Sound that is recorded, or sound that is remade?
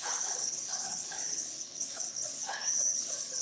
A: remade